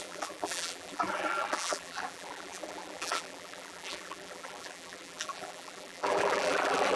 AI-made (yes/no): yes